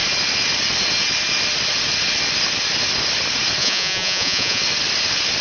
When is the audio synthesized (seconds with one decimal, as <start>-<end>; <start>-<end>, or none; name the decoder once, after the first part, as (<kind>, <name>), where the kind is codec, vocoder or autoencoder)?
3.6-4.6 (vocoder, Vocos)

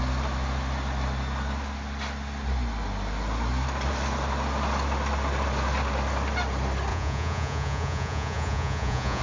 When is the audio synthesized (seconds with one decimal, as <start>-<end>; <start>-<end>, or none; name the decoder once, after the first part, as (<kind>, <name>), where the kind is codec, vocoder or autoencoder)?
6.9-9.2 (vocoder, Vocos)

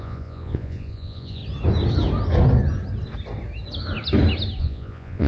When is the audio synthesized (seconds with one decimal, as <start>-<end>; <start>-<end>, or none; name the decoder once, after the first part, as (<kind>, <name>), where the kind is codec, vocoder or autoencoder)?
0.0-1.4 (vocoder, Vocos); 4.6-5.3

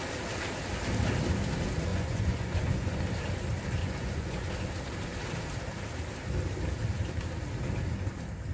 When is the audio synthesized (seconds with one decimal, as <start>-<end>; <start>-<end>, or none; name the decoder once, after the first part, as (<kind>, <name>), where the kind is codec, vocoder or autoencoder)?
1.9-3.0 (vocoder, Vocos); 3.8-4.5

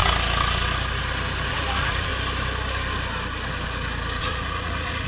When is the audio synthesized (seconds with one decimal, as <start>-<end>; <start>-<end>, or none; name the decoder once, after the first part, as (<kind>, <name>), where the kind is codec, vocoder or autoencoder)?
1.5-2.1 (vocoder, Vocos); 4.2-5.1

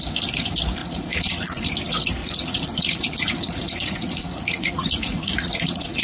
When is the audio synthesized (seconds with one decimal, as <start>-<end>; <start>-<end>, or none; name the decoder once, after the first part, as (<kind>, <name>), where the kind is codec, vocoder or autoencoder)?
0.8-1.7 (vocoder, Vocos); 2.2-6.0

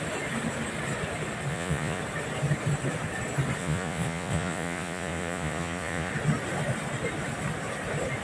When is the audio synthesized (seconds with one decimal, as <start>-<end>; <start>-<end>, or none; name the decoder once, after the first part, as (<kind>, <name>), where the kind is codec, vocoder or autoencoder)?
1.5-2.0 (vocoder, Vocos); 3.6-6.1

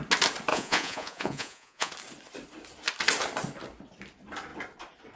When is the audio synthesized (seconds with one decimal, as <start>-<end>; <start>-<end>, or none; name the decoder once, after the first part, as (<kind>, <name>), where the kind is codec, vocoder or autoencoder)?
0.5-1.9 (vocoder, Vocos)